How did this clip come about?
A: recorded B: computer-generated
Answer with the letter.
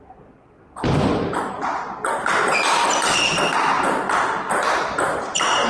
A